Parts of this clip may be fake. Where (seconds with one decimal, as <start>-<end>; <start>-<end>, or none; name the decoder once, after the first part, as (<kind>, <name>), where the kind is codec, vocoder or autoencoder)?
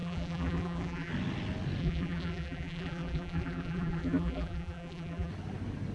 0.0-1.1 (vocoder, BigVGAN v2); 1.8-5.3